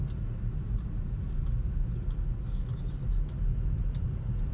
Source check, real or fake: real